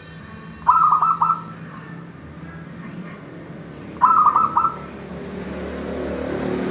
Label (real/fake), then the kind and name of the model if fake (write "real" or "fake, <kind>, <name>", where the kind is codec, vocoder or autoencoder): real